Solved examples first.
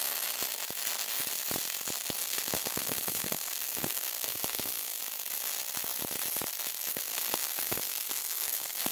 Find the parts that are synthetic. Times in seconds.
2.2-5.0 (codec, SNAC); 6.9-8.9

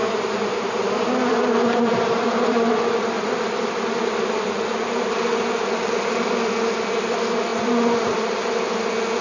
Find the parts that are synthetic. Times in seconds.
0.0-3.4 (vocoder, BigVGAN v2); 4.7-6.3; 7.5-8.5

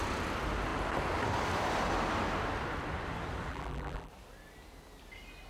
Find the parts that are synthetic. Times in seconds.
3.5-4.1 (vocoder, BigVGAN v2)